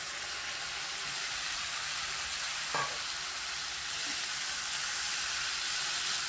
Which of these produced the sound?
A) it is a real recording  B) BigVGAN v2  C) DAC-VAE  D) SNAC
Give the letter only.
A